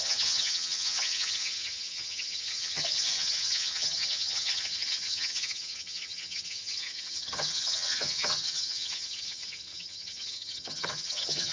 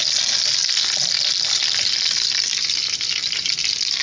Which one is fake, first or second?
first